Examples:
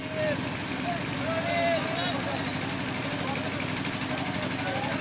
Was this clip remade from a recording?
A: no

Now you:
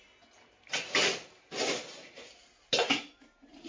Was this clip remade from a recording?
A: no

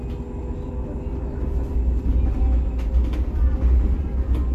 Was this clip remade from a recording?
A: no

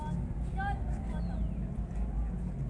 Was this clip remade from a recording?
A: no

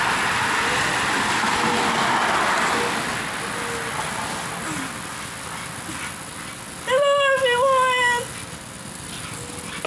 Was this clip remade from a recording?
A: no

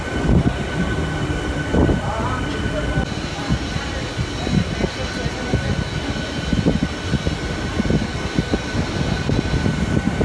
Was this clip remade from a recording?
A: no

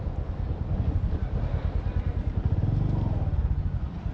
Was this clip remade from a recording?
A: no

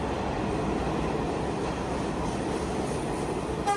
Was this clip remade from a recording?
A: no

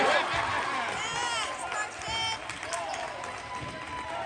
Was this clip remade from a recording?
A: no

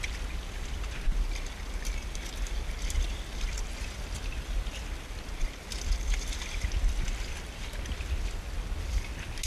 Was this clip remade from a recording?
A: no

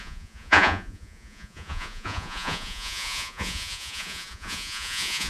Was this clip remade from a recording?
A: yes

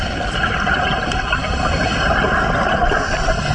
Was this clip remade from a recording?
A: yes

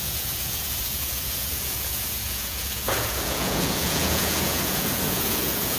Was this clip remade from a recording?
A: yes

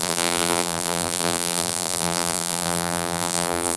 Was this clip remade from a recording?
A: yes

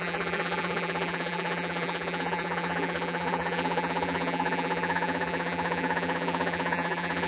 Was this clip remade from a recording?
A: yes